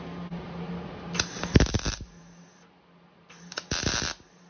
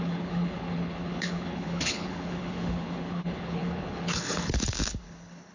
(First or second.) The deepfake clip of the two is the second